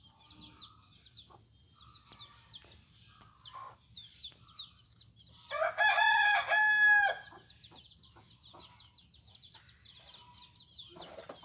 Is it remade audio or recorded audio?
recorded